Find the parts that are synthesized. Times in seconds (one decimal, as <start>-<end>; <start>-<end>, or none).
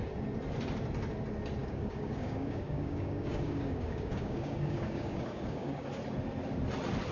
1.6-5.9